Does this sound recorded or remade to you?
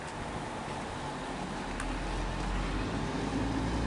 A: recorded